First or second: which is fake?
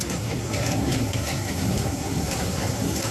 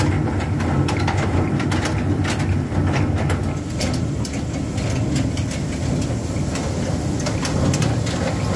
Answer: first